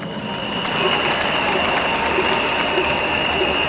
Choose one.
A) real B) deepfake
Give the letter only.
A